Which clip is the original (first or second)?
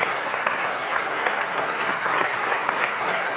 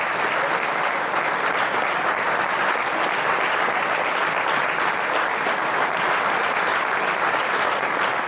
second